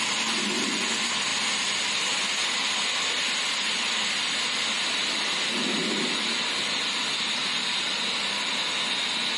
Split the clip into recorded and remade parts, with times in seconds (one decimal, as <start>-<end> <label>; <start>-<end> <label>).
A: 0.0-1.3 remade; 1.3-4.8 recorded; 4.8-5.8 remade; 5.8-6.3 recorded; 6.3-7.4 remade; 7.4-9.4 recorded